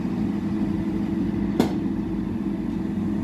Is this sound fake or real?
real